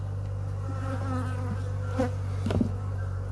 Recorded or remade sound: recorded